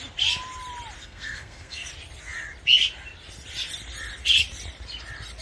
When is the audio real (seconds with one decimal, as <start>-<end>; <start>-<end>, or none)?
0.0-1.0; 1.9-5.4